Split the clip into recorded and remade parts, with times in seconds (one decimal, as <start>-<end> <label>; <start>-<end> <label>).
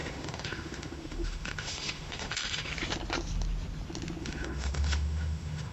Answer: 0.0-2.7 remade; 2.7-4.2 recorded; 4.2-5.7 remade